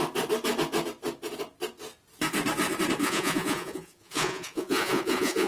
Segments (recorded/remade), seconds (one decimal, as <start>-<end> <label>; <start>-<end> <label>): 0.0-3.0 recorded; 3.0-5.5 remade